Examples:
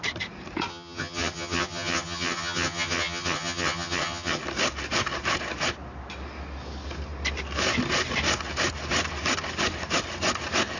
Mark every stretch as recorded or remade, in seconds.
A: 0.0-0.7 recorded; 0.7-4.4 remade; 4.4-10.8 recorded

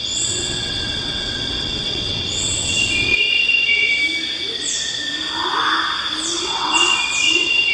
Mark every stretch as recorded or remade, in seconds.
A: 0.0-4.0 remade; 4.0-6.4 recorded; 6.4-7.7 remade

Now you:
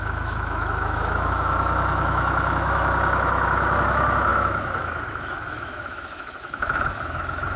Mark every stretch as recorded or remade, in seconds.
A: 0.0-7.6 remade

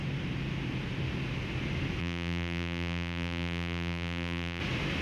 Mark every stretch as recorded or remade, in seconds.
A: 0.0-2.0 recorded; 2.0-4.6 remade; 4.6-5.0 recorded